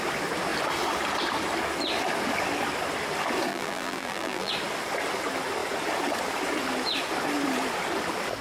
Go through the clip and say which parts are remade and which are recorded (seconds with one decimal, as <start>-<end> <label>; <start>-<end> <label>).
0.0-3.5 recorded; 3.5-4.5 remade; 4.5-8.4 recorded